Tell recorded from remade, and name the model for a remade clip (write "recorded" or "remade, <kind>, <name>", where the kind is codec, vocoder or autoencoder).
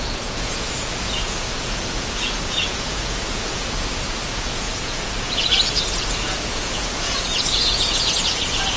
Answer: remade, vocoder, Vocos